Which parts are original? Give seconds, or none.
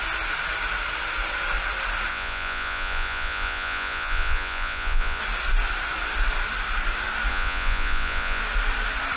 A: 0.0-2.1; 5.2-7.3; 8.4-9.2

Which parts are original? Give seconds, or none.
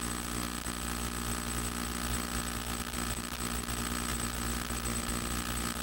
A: 0.0-5.8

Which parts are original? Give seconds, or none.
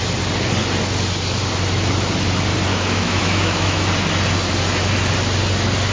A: 0.0-2.7; 3.9-5.9